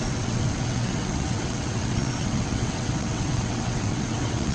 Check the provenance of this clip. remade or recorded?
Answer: remade